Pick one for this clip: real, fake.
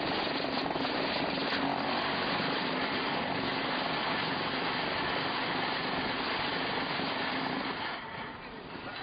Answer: real